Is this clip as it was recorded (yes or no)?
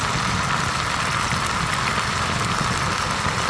yes